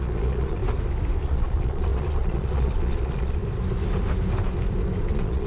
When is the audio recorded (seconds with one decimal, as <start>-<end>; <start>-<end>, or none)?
0.6-1.2; 3.4-5.1